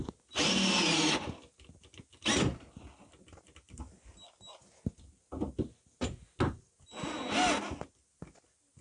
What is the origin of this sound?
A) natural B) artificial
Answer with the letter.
A